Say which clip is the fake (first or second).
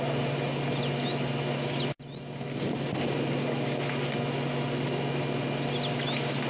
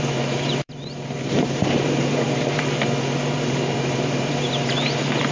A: second